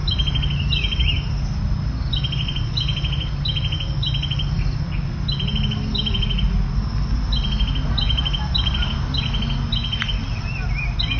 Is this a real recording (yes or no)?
yes